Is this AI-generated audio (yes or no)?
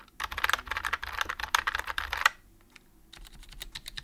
no